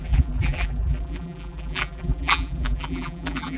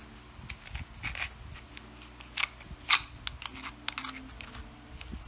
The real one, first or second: second